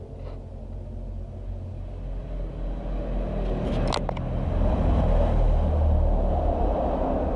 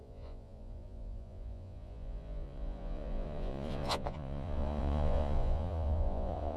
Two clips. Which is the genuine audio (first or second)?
first